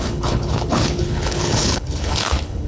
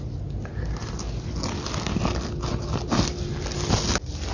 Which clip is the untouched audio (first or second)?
second